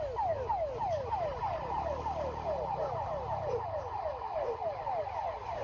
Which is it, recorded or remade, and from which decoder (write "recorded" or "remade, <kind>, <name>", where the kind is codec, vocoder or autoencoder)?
recorded